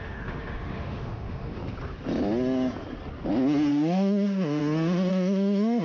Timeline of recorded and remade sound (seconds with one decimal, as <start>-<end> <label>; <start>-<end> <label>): 0.0-1.6 remade; 1.6-3.7 recorded; 3.7-4.6 remade; 4.6-5.1 recorded; 5.1-5.8 remade